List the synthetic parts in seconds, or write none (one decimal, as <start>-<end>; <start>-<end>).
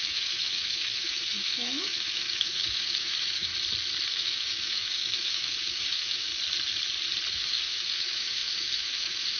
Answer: 0.0-3.5; 4.1-6.3; 7.3-9.4